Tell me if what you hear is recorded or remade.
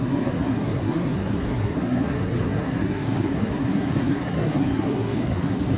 remade